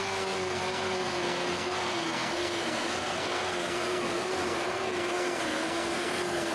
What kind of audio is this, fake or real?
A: fake